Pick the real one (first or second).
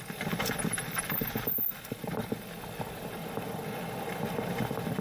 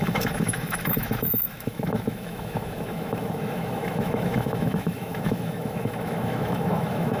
first